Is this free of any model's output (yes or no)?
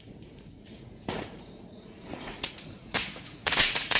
no